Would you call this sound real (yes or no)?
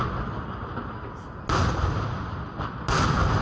yes